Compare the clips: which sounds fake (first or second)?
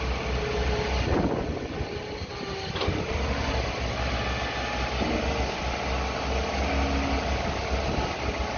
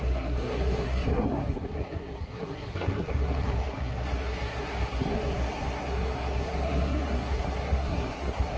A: second